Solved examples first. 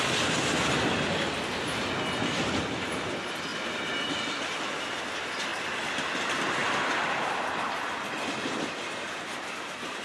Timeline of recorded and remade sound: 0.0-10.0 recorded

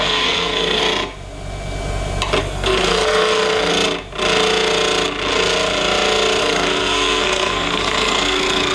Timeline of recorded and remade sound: 0.0-0.8 remade; 0.8-2.4 recorded; 2.4-3.7 remade; 3.7-6.4 recorded; 6.4-8.7 remade

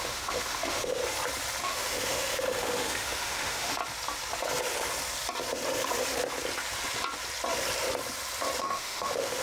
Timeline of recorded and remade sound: 0.0-1.0 remade; 1.0-1.6 recorded; 1.6-3.8 remade; 3.8-8.6 recorded; 8.6-9.4 remade

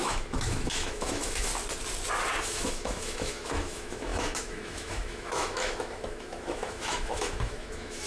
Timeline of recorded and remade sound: 0.0-1.5 remade; 1.5-2.4 recorded; 2.4-8.1 remade

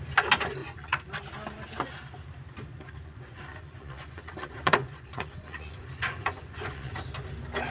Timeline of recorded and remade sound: 0.0-0.6 recorded; 0.6-1.1 remade; 1.1-2.7 recorded; 2.7-6.9 remade; 6.9-7.7 recorded

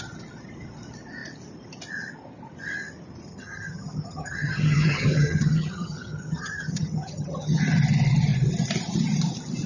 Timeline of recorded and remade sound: 0.0-3.3 recorded; 3.3-7.6 remade; 7.6-9.7 recorded